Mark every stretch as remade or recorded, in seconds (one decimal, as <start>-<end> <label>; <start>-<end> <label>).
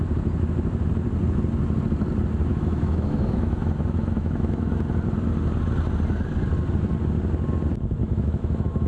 0.0-2.5 recorded; 2.5-4.8 remade; 4.8-8.0 recorded; 8.0-8.9 remade